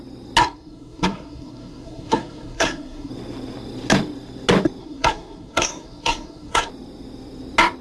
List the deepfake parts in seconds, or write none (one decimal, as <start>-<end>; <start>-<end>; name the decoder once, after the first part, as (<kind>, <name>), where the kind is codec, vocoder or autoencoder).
0.4-3.1 (codec, SNAC); 4.8-6.7